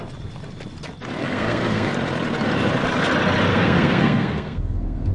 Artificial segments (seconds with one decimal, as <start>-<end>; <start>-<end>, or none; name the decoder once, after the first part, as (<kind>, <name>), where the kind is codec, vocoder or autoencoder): 1.2-1.9 (codec, SNAC); 3.5-5.1